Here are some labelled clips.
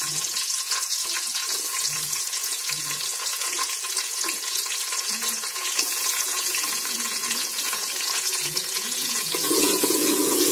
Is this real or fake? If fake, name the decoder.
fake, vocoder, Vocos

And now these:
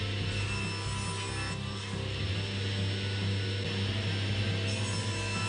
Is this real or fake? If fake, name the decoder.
real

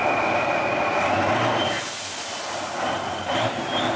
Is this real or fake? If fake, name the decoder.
real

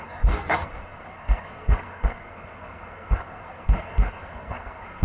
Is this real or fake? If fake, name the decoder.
fake, codec, SNAC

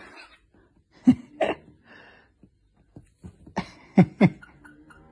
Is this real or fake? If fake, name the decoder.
real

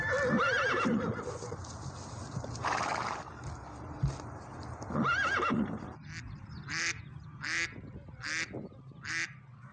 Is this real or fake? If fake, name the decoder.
real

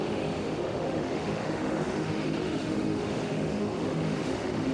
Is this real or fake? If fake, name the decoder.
fake, autoencoder, DAC-VAE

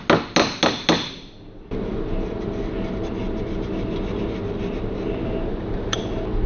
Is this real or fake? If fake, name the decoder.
real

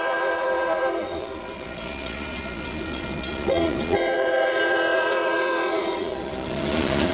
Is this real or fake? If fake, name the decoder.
fake, vocoder, Vocos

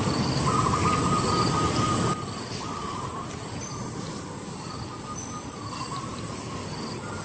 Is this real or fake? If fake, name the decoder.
real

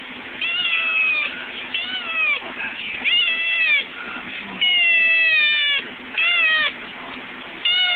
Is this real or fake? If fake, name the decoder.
real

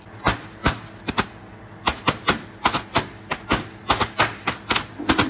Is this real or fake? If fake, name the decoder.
real